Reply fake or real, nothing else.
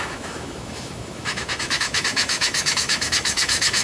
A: fake